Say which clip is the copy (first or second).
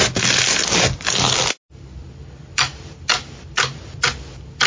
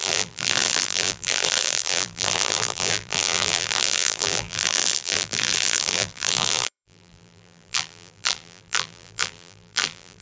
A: second